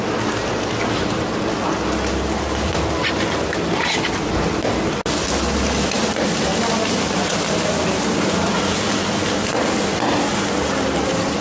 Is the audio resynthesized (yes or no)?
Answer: no